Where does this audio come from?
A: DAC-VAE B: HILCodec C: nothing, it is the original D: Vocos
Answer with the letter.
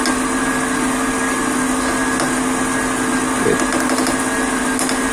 C